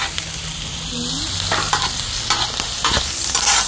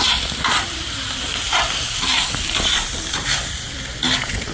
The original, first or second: first